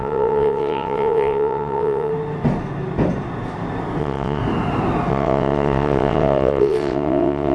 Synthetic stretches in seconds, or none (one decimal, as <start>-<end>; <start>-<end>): 0.0-2.1; 4.0-4.4; 5.1-7.5